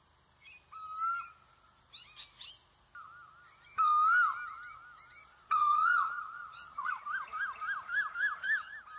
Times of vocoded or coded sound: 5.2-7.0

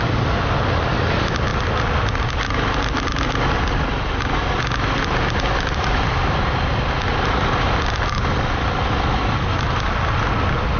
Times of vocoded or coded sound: none